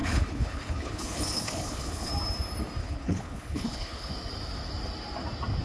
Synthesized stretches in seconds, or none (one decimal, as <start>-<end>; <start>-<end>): 0.0-2.1; 2.8-4.1